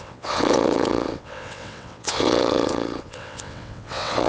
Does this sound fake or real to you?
fake